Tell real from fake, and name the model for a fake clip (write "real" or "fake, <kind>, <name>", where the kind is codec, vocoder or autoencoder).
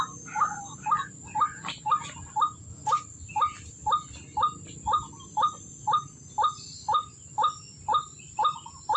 real